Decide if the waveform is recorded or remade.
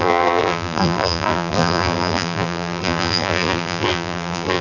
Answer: remade